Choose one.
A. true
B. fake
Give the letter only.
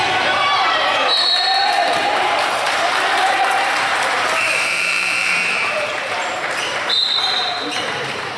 B